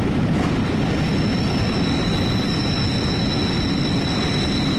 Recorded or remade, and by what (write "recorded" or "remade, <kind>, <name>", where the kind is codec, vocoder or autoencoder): recorded